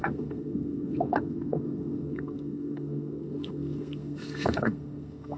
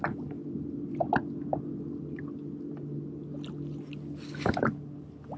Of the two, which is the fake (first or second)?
first